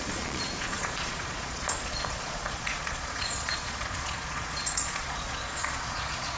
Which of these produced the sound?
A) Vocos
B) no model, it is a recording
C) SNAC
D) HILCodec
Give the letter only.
A